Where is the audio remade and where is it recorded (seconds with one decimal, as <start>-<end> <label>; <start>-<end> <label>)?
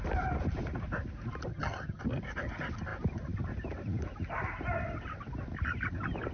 0.0-1.5 recorded; 1.5-2.0 remade; 2.0-6.3 recorded